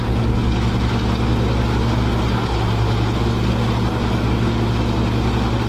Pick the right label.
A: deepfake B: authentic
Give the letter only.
B